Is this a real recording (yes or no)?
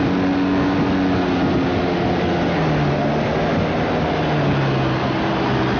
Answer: yes